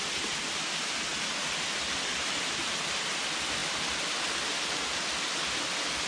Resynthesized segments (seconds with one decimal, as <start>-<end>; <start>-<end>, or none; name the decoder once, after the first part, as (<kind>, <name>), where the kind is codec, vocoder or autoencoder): none